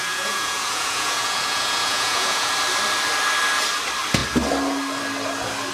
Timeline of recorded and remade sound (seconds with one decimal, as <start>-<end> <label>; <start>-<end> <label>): 0.0-2.5 remade; 2.5-5.7 recorded